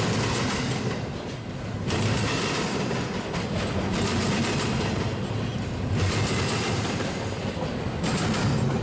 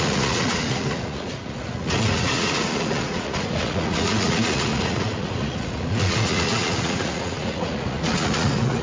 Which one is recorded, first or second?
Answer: first